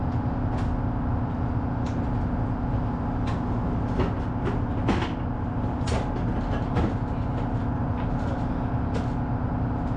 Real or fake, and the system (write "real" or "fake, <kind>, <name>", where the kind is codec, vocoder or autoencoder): real